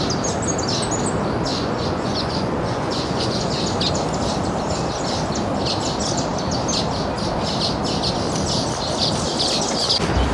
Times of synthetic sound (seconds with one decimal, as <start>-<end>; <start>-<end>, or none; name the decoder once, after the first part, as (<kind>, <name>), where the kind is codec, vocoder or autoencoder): 1.5-3.5 (vocoder, Vocos)